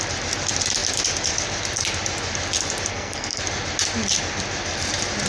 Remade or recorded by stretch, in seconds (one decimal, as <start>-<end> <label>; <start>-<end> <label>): 0.0-2.9 recorded; 2.9-3.4 remade; 3.4-5.3 recorded